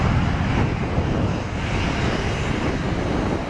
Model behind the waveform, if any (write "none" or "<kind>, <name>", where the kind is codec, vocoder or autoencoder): none